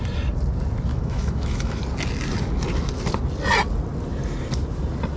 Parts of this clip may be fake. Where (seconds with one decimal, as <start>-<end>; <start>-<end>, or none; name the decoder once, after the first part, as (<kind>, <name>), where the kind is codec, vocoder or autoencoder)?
0.9-1.8 (autoencoder, DAC-VAE)